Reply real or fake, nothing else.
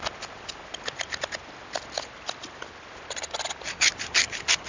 real